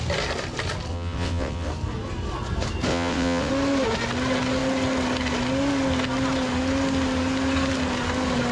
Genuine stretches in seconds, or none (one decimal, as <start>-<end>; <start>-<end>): 0.0-0.9; 1.7-2.9; 3.5-8.5